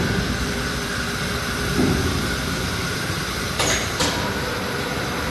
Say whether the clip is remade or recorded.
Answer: remade